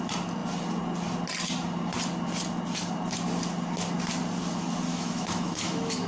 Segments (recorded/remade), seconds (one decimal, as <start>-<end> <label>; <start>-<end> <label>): 0.0-4.9 recorded; 4.9-6.1 remade